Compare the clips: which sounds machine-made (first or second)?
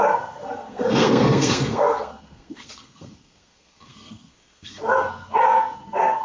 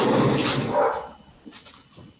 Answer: first